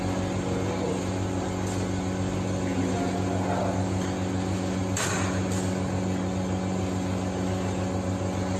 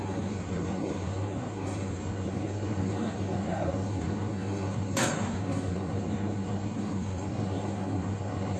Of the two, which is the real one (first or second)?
first